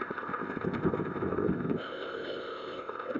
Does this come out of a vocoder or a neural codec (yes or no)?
yes